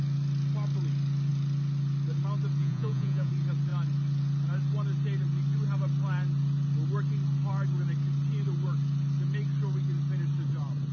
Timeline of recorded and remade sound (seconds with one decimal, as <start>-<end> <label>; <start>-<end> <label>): 0.0-2.6 recorded; 2.6-3.3 remade; 3.3-10.9 recorded